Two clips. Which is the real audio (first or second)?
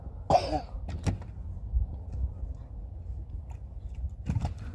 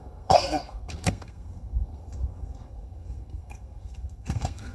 first